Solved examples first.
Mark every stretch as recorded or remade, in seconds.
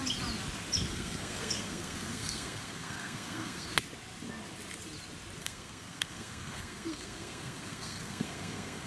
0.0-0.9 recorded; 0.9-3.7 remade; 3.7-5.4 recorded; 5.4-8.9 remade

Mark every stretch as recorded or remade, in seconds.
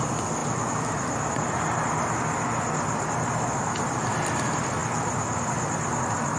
0.0-6.4 recorded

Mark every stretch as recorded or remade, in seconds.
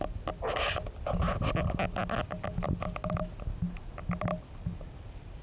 0.0-5.4 recorded